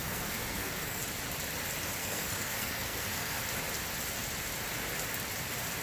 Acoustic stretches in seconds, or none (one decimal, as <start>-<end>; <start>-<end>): 1.0-2.0; 3.4-5.8